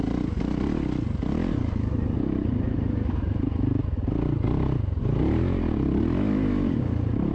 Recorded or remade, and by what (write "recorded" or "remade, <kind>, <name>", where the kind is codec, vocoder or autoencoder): recorded